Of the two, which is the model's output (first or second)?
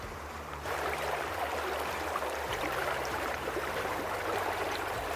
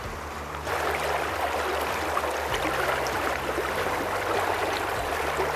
first